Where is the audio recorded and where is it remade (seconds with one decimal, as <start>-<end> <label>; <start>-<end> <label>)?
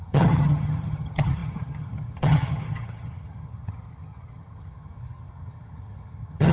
0.0-6.5 remade